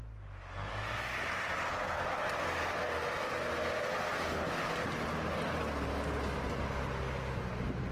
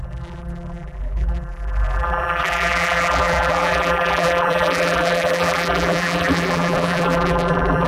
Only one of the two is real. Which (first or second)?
first